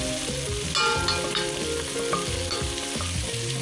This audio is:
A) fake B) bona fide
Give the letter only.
B